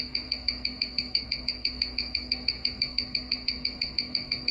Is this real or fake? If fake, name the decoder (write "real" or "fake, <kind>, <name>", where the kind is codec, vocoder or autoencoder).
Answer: fake, codec, SNAC